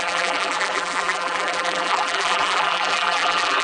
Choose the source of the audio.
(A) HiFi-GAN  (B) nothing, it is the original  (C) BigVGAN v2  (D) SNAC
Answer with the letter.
C